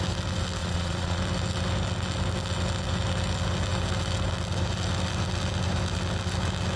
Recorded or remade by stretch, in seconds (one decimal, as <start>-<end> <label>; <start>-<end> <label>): 0.0-0.6 recorded; 0.6-1.2 remade; 1.2-6.8 recorded